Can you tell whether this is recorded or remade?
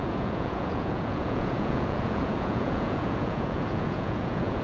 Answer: remade